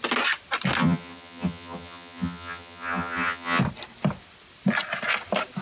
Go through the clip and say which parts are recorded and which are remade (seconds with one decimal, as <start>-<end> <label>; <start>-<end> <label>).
0.0-0.8 recorded; 0.8-3.6 remade; 3.6-5.6 recorded